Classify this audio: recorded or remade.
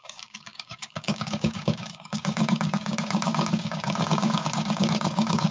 remade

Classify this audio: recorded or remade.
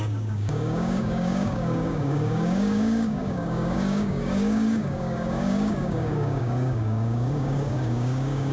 remade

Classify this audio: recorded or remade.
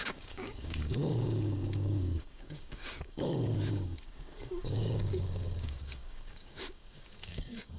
remade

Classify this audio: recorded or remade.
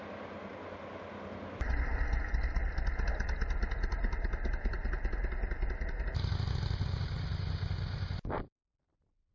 recorded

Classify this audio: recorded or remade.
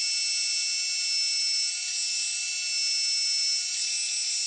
recorded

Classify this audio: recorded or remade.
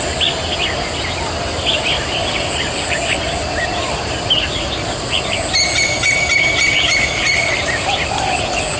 recorded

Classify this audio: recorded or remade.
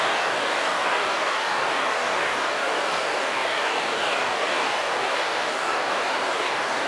remade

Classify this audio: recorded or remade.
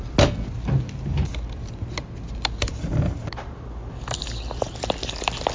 recorded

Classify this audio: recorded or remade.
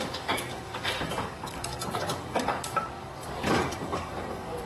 remade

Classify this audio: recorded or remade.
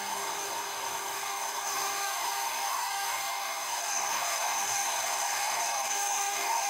remade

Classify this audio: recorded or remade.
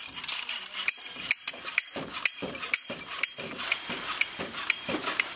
recorded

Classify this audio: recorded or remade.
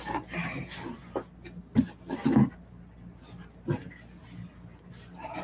recorded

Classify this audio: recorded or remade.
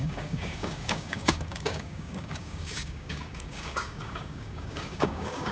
remade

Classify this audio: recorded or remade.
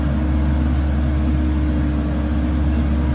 recorded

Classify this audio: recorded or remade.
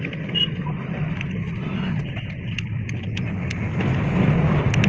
recorded